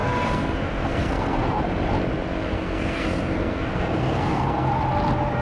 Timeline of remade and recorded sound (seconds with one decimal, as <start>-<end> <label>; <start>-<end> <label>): 0.0-1.6 remade; 1.6-2.4 recorded; 2.4-4.8 remade; 4.8-5.4 recorded